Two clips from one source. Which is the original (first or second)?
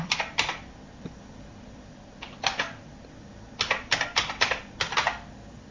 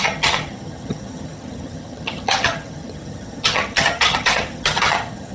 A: first